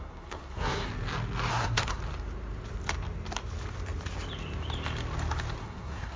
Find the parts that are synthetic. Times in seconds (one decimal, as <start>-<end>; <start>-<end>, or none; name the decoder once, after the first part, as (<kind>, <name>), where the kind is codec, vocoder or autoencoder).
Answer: 0.0-0.9 (codec, SNAC); 1.5-2.0; 5.6-6.2